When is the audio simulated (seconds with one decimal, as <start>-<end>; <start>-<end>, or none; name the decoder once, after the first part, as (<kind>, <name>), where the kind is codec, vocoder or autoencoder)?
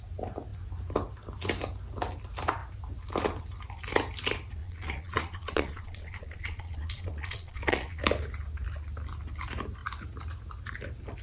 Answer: 4.6-8.0 (vocoder, Vocos)